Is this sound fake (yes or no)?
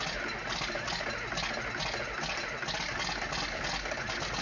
no